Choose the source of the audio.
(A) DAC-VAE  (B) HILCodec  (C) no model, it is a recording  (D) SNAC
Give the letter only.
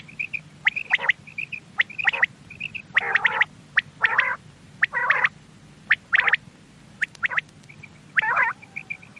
C